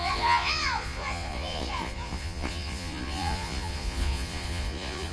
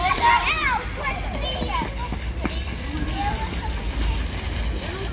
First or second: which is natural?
second